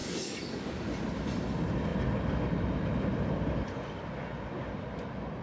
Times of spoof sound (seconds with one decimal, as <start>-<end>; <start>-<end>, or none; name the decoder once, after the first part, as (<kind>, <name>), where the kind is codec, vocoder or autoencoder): 0.0-0.7 (codec, DAC)